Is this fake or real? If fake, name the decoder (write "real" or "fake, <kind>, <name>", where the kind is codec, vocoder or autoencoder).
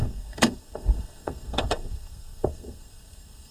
fake, codec, SNAC